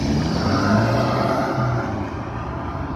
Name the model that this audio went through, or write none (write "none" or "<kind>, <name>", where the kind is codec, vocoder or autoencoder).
none